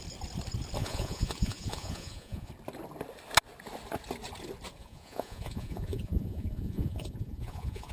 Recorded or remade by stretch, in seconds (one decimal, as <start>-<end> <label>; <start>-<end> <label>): 0.0-0.8 recorded; 0.8-2.5 remade; 2.5-4.8 recorded; 4.8-7.9 remade